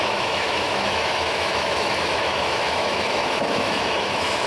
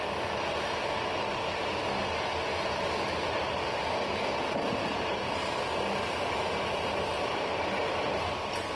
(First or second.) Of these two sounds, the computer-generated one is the first